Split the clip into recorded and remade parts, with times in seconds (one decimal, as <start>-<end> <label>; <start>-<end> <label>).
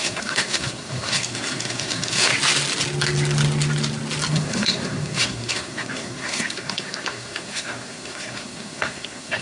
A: 0.0-2.3 remade; 2.3-4.3 recorded; 4.3-9.4 remade